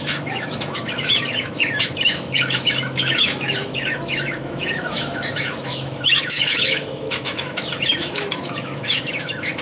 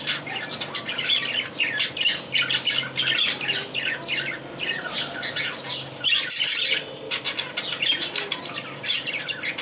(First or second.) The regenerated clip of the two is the first